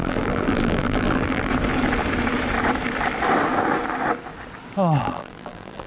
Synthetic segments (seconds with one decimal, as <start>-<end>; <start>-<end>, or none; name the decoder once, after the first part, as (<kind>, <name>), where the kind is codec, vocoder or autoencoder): 0.0-1.5 (vocoder, BigVGAN v2); 5.0-5.9